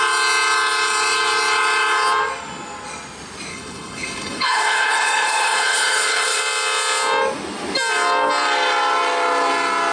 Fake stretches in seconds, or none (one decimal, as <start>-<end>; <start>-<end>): 3.5-6.4